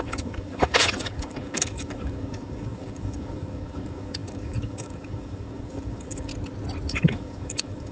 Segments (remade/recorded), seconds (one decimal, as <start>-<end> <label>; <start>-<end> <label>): 0.0-6.3 remade; 6.3-6.9 recorded; 6.9-7.9 remade